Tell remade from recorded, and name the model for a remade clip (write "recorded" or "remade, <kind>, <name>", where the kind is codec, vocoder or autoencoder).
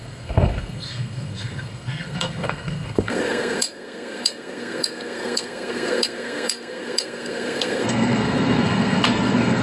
remade, codec, SNAC